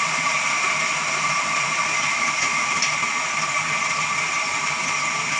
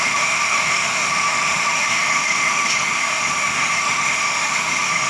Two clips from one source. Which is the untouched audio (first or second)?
first